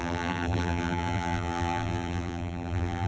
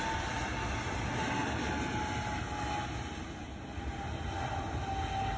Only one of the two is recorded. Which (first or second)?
second